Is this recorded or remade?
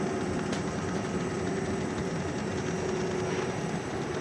recorded